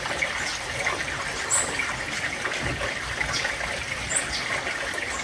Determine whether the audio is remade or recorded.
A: recorded